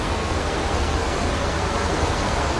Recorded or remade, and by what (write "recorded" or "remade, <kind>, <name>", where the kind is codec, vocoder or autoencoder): remade, codec, SNAC